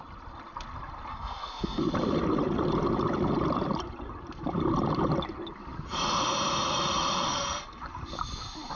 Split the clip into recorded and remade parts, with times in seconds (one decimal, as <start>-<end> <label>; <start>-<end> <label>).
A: 0.0-1.1 recorded; 1.1-1.8 remade; 1.8-7.3 recorded; 7.3-7.8 remade; 7.8-8.8 recorded